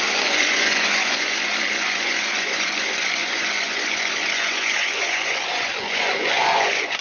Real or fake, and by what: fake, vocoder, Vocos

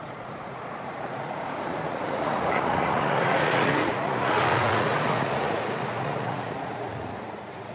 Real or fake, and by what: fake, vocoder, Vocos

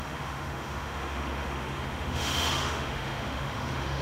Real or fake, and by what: fake, autoencoder, DAC-VAE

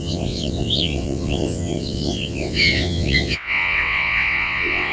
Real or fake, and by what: fake, vocoder, WaveNeXt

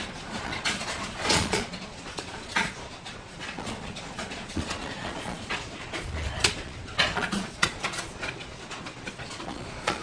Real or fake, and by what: fake, vocoder, Vocos